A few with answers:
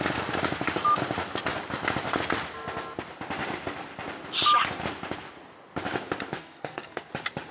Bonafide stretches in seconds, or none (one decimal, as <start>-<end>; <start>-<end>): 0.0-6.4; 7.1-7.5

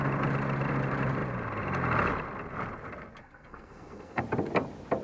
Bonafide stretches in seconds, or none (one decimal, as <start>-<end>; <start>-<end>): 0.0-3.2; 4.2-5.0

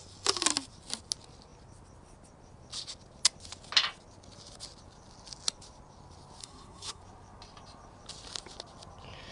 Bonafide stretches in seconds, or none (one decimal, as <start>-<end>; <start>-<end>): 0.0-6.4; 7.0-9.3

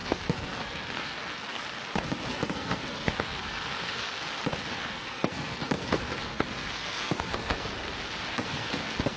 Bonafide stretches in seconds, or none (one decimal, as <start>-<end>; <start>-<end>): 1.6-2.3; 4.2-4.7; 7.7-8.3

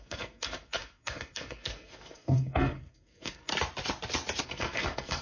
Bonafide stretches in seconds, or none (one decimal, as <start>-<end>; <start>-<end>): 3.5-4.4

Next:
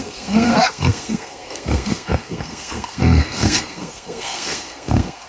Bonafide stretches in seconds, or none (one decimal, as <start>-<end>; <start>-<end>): none